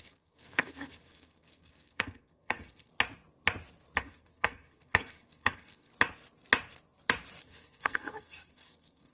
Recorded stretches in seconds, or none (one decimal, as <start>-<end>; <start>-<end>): 2.9-4.0; 5.9-7.4